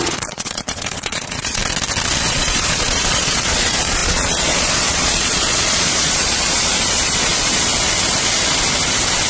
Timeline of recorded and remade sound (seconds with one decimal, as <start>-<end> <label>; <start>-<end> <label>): 0.0-1.6 remade; 1.6-2.3 recorded; 2.3-7.7 remade; 7.7-9.3 recorded